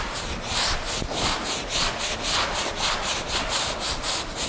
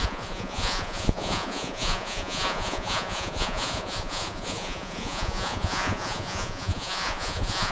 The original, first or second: first